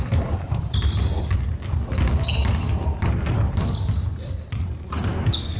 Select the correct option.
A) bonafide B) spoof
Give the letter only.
A